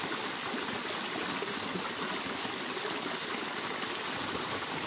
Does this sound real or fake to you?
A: real